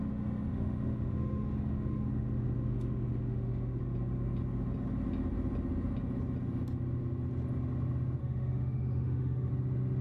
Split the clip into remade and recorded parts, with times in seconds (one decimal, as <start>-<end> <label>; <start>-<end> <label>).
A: 0.0-0.5 recorded; 0.5-3.8 remade; 3.8-8.2 recorded; 8.2-9.5 remade; 9.5-10.0 recorded